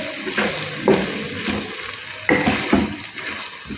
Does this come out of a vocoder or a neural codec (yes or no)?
no